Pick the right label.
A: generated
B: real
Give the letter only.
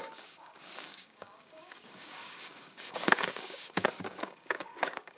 A